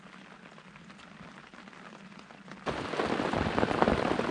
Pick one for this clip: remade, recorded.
recorded